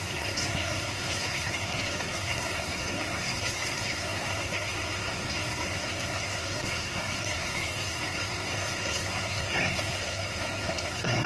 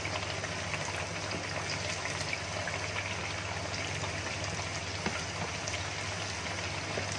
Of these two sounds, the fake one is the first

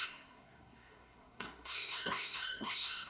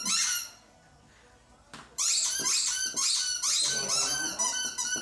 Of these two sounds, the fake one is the first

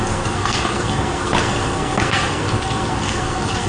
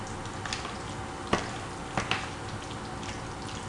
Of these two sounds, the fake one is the first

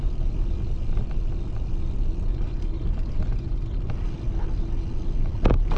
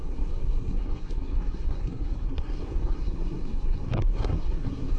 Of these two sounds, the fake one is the second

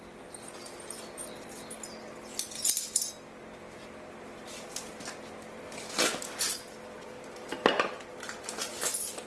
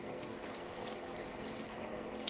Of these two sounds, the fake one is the second